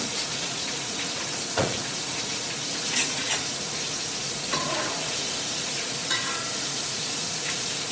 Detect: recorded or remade remade